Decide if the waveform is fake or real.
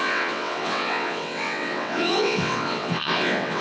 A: fake